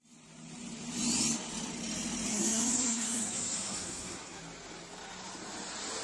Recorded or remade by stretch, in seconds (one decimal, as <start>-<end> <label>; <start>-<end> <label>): 0.0-2.3 recorded; 2.3-4.4 remade; 4.4-6.0 recorded